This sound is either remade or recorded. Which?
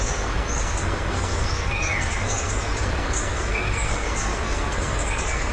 remade